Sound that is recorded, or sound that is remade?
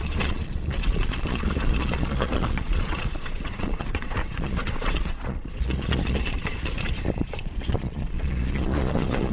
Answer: remade